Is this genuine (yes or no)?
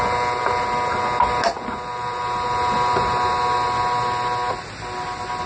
yes